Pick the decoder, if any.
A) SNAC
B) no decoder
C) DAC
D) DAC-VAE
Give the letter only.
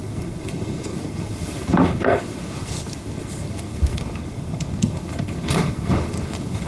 A